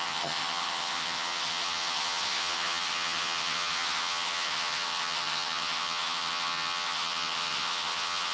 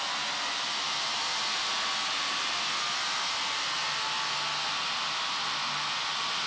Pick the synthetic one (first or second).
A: first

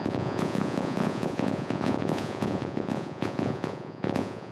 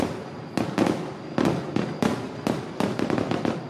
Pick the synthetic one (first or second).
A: first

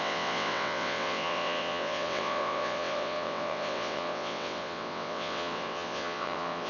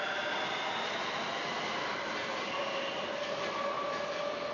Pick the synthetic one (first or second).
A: first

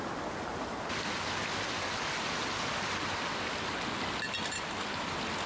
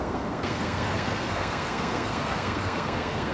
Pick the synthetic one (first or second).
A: second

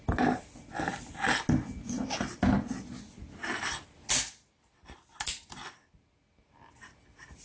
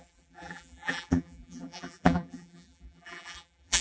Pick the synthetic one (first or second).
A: second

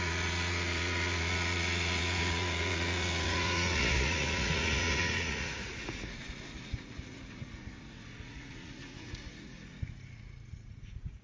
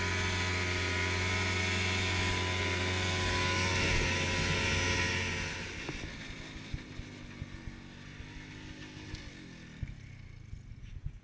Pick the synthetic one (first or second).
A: first